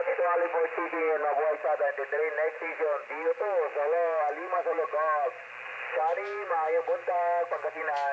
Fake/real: real